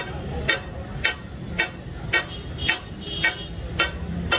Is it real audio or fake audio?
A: real